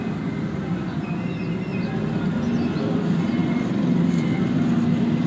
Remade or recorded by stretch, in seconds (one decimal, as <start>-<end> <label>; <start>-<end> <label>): 0.0-5.3 recorded